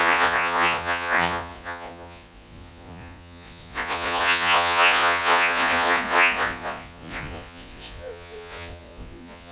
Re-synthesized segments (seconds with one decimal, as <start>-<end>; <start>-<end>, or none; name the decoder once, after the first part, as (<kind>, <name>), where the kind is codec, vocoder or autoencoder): 0.0-9.5 (vocoder, Vocos)